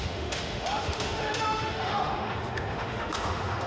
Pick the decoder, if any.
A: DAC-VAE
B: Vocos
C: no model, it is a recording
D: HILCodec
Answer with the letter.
A